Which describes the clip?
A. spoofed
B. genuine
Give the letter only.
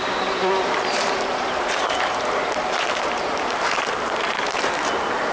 A